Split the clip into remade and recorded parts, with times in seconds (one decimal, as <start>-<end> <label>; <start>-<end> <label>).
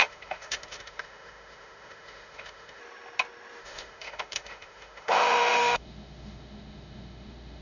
0.0-2.8 remade; 2.8-3.6 recorded; 3.6-7.6 remade